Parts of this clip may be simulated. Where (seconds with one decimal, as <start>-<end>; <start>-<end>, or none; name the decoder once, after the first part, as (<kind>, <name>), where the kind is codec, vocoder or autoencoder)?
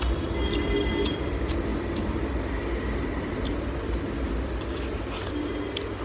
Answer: none